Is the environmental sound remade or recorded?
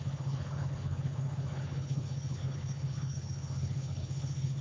remade